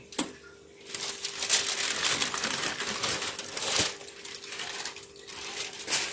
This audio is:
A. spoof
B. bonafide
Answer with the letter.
B